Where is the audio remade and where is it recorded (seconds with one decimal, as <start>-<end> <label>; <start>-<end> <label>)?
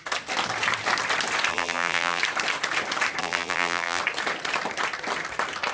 0.0-1.5 recorded; 1.5-2.2 remade; 2.2-3.2 recorded; 3.2-4.0 remade; 4.0-5.7 recorded